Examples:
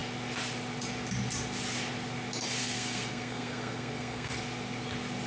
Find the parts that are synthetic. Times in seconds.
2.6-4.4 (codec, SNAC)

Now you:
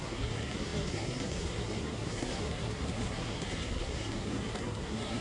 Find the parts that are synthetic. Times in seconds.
0.0-5.2 (codec, SNAC)